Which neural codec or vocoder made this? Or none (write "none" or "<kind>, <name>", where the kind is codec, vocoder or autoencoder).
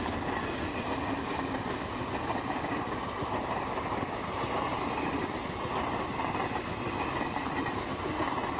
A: none